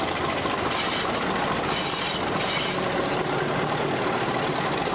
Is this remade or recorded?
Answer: recorded